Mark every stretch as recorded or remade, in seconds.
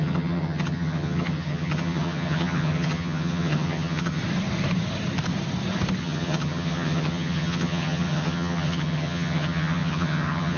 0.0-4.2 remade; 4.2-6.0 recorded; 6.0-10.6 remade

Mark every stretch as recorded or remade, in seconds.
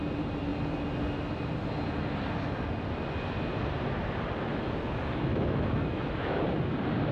0.0-5.3 recorded; 5.3-6.4 remade; 6.4-7.1 recorded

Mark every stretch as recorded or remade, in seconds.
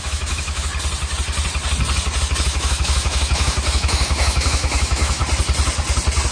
0.0-0.7 remade; 0.7-2.4 recorded; 2.4-5.2 remade; 5.2-6.3 recorded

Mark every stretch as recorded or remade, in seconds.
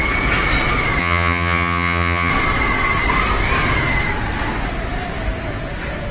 0.0-1.0 recorded; 1.0-2.3 remade; 2.3-6.1 recorded